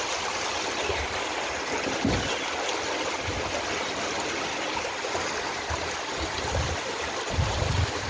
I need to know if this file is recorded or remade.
recorded